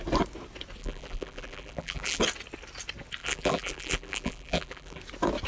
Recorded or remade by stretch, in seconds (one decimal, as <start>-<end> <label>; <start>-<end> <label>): 0.0-0.8 recorded; 0.8-2.2 remade; 2.2-3.2 recorded; 3.2-5.0 remade; 5.0-5.5 recorded